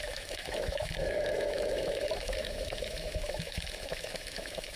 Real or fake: fake